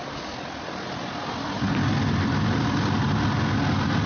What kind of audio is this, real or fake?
real